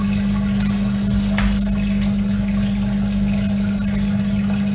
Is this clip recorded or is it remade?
recorded